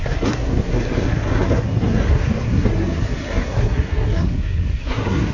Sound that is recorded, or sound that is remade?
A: remade